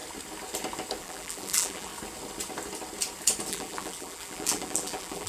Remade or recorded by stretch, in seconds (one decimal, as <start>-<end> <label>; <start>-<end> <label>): 0.0-1.0 recorded; 1.0-1.9 remade; 1.9-3.5 recorded; 3.5-5.3 remade